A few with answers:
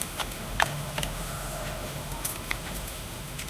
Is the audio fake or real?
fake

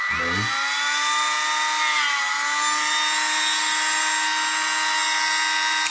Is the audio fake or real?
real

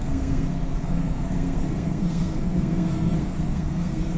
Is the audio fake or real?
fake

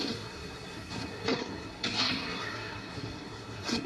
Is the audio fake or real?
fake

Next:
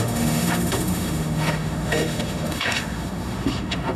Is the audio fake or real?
fake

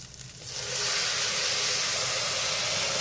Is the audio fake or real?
real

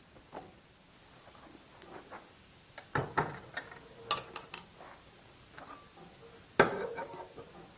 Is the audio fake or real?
real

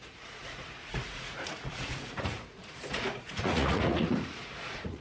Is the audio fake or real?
fake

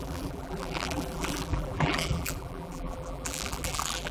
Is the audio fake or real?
fake